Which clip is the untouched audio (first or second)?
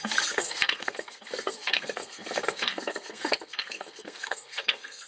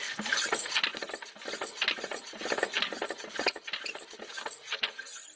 second